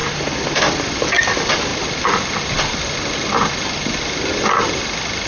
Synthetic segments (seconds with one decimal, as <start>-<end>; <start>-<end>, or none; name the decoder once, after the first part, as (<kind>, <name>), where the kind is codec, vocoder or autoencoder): none